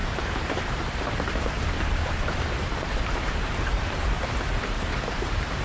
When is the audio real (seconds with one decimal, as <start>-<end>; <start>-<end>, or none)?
0.8-2.0